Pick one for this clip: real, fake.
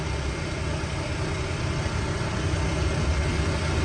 real